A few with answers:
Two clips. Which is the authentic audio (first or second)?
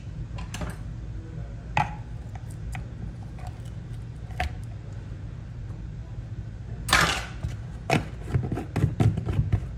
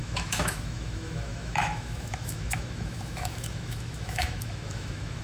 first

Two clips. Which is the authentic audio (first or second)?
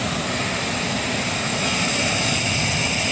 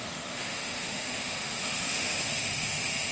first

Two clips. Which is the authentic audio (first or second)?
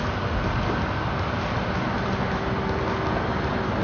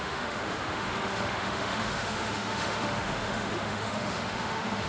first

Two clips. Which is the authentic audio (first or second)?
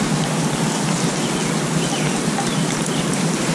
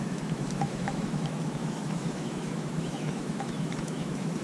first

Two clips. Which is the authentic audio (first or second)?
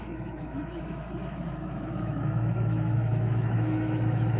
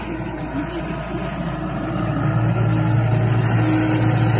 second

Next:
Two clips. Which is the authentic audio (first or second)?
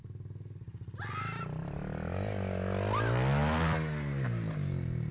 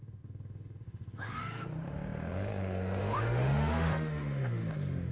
first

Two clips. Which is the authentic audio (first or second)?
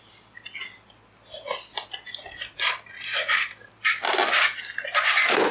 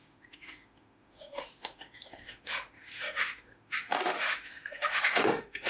first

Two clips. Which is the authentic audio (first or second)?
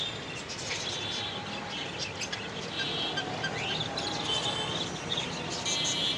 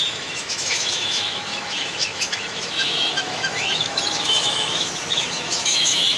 first